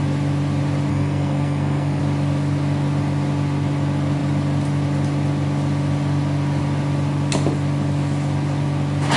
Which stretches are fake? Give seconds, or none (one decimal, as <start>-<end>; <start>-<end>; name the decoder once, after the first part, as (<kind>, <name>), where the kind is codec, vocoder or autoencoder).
0.9-2.0 (codec, SNAC)